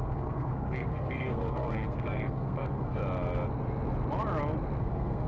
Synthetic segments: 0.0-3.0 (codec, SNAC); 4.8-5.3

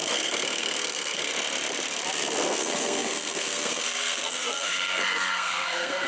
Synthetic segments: 0.0-1.3 (codec, SNAC); 2.6-6.1

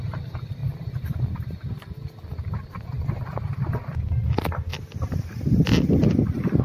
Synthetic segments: none

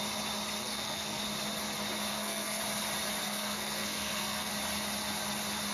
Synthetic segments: 0.6-1.2 (codec, SNAC); 2.1-2.6; 3.2-4.5

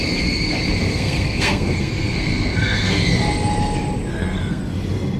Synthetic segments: 0.9-3.0 (codec, SNAC); 4.1-4.6

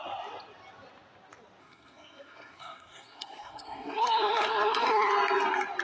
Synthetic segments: 1.6-5.1 (codec, SNAC)